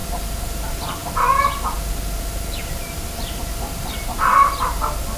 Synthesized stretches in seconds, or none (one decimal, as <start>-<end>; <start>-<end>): none